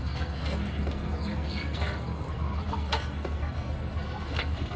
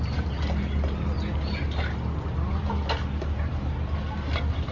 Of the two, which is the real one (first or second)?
second